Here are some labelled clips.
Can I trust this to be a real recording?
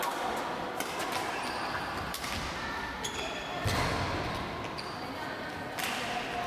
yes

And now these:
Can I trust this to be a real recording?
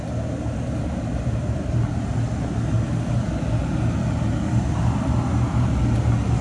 yes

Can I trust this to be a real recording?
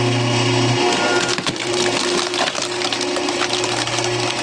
yes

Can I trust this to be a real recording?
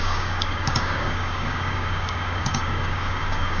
no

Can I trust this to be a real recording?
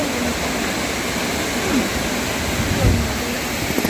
yes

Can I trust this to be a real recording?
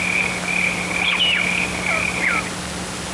yes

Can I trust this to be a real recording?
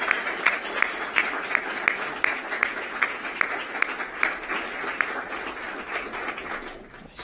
yes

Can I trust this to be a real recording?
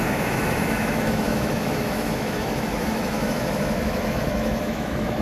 no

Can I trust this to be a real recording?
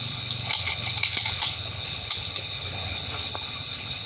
no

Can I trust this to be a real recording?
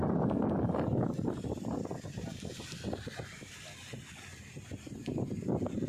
yes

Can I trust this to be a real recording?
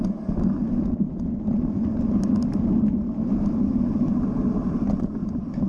yes